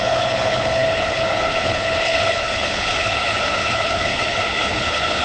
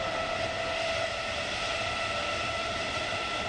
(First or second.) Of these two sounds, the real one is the second